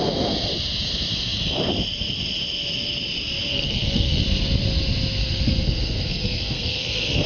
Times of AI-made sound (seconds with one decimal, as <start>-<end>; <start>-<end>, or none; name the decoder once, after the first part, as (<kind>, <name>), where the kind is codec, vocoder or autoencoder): 3.5-4.2 (codec, SNAC); 5.2-7.3